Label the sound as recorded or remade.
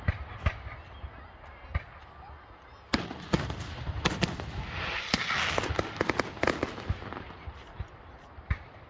recorded